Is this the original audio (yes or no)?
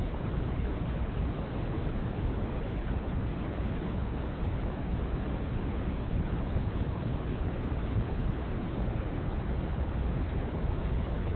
no